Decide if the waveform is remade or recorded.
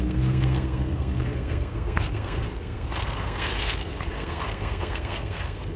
remade